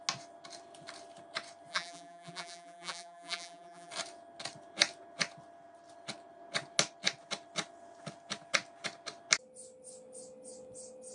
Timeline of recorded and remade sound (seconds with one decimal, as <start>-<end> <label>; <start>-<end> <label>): 0.0-1.7 recorded; 1.7-3.9 remade; 3.9-11.1 recorded